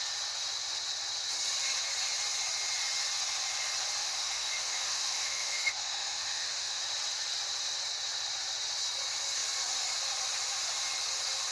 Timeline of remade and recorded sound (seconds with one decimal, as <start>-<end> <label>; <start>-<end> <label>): 0.0-4.0 recorded; 4.0-6.8 remade; 6.8-11.5 recorded